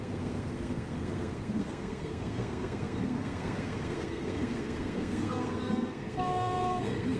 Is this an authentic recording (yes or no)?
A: no